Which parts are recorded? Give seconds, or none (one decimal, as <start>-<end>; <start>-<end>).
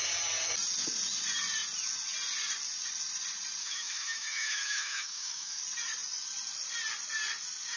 0.0-3.6; 5.6-7.8